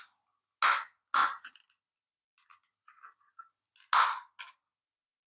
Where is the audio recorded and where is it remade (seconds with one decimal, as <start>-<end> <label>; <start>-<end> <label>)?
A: 0.0-1.2 recorded; 1.2-1.7 remade; 1.7-5.3 recorded